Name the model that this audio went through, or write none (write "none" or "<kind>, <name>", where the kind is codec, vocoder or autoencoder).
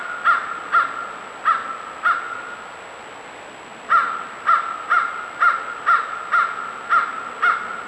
none